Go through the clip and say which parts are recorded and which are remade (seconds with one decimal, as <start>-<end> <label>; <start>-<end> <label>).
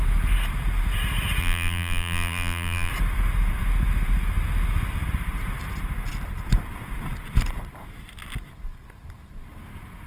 0.0-1.4 recorded; 1.4-2.9 remade; 2.9-10.1 recorded